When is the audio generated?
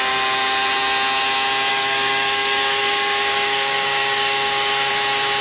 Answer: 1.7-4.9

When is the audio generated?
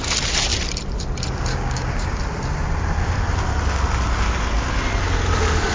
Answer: 1.5-2.2